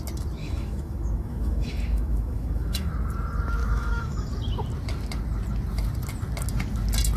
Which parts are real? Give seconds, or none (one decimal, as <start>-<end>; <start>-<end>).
0.0-0.4; 2.9-3.6; 4.3-7.2